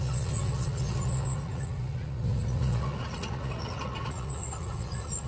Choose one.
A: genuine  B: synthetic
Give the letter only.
B